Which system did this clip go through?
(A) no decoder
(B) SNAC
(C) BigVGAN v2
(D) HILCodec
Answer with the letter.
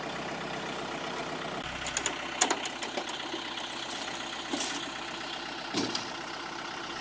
A